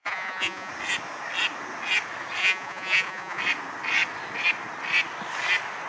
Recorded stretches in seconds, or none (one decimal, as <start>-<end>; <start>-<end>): 0.7-2.4; 3.4-5.9

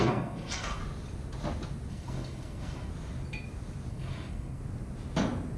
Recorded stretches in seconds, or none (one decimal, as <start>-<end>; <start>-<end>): 0.8-1.9; 2.9-3.9; 4.6-5.6

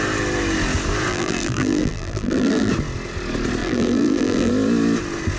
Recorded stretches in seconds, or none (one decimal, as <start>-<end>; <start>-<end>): 0.0-1.1; 2.7-3.6; 4.5-5.4

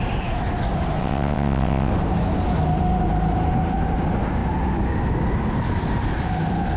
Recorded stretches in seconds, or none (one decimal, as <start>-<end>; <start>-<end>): 0.0-1.0; 1.9-6.8

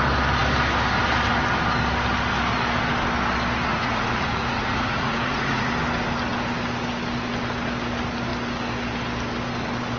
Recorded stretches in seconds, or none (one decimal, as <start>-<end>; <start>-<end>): 0.0-3.7; 5.7-10.0